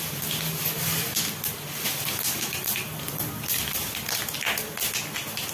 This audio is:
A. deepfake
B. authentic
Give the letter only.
B